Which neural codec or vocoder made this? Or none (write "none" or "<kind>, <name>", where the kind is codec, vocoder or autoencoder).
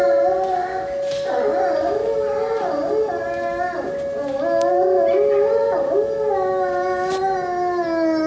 none